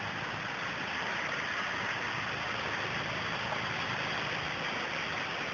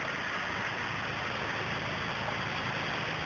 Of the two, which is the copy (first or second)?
first